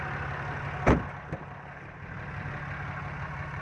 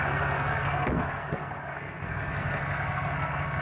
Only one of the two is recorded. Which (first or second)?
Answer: first